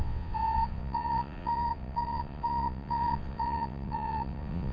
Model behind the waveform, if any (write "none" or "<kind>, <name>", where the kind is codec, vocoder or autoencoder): vocoder, WaveNeXt